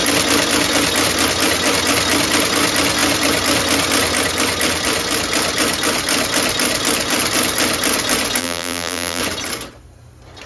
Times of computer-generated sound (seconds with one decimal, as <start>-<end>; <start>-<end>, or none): 8.4-9.2